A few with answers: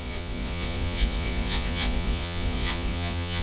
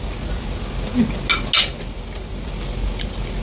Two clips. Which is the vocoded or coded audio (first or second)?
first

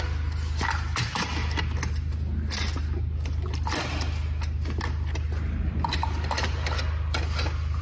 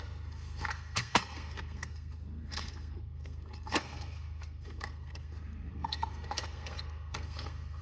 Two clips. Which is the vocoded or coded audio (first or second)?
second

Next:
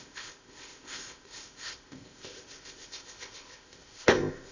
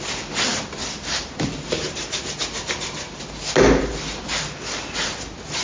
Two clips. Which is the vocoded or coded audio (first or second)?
first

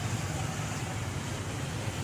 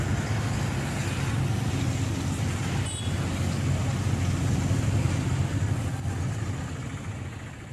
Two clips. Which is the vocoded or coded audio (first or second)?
first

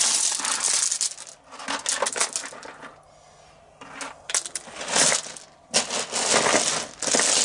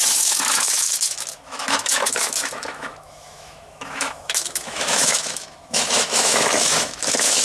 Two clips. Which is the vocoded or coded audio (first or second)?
second